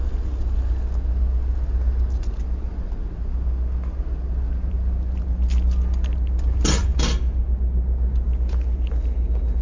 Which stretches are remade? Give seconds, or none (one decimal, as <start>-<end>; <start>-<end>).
none